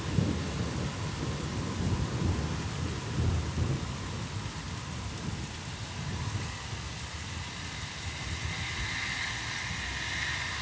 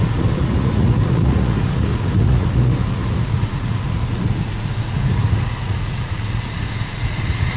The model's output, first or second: second